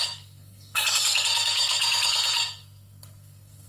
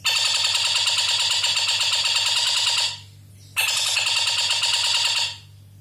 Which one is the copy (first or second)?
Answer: first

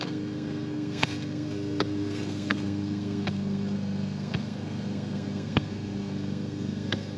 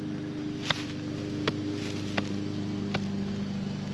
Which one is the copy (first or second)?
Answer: first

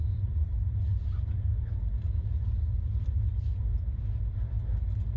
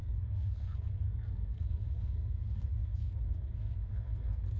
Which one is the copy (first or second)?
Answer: second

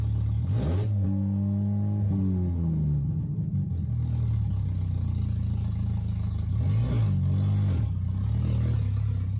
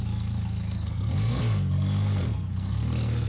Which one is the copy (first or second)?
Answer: second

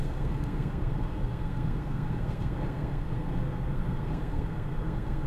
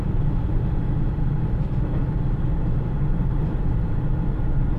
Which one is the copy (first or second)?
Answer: first